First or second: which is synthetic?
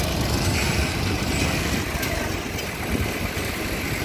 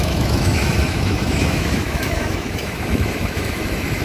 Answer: second